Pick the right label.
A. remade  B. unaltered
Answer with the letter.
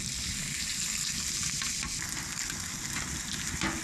B